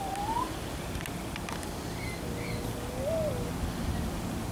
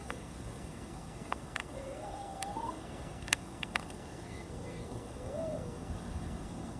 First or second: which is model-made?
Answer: second